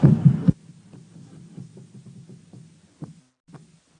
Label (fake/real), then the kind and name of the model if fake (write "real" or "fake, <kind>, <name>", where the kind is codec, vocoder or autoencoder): real